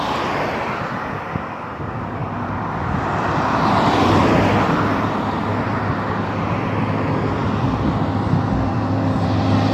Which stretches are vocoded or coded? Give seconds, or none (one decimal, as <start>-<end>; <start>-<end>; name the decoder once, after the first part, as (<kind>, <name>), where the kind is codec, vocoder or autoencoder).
none